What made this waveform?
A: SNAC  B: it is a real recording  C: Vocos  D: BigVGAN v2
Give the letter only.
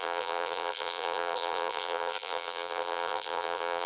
D